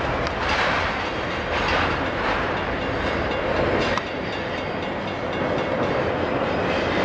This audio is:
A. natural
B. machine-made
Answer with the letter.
A